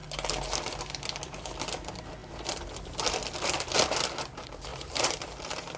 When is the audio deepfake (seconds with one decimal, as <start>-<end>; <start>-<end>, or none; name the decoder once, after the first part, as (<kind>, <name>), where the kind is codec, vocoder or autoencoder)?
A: 4.7-5.2 (vocoder, BigVGAN v2)